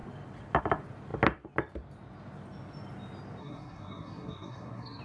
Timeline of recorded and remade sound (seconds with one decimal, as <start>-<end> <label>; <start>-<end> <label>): 0.0-3.4 recorded; 3.4-5.0 remade